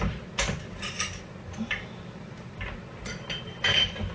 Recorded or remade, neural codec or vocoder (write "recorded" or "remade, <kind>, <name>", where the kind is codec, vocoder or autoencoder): recorded